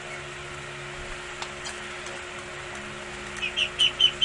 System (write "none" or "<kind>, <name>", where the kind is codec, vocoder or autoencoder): none